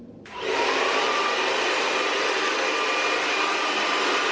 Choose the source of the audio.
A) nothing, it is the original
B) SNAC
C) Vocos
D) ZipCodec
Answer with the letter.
A